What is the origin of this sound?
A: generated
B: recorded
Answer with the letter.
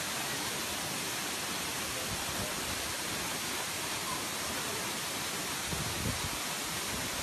B